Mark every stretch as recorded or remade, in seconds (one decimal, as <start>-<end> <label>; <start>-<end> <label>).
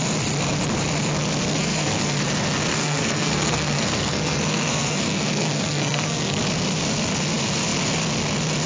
0.0-1.6 recorded; 1.6-2.2 remade; 2.2-2.7 recorded; 2.7-6.4 remade; 6.4-8.7 recorded